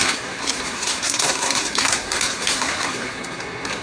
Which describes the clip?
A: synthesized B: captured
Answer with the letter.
A